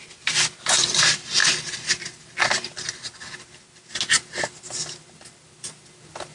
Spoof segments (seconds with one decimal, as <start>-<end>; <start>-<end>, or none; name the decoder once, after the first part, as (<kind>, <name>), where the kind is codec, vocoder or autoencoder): none